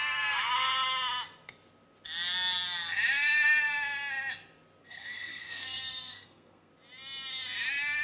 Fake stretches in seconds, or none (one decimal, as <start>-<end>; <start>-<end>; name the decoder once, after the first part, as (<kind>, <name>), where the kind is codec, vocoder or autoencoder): 4.8-6.7 (codec, SNAC)